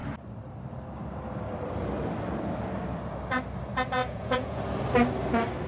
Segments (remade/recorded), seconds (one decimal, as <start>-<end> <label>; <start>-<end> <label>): 0.0-4.0 recorded; 4.0-4.6 remade; 4.6-5.7 recorded